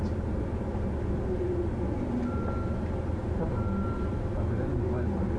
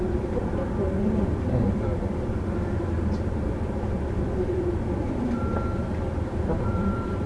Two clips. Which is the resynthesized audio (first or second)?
second